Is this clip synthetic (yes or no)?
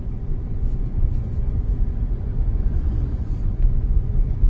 yes